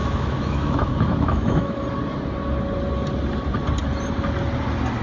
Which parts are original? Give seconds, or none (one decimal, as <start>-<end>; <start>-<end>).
1.8-5.0